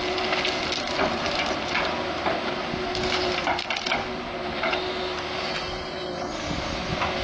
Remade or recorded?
recorded